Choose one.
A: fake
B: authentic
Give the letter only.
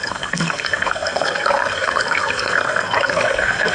A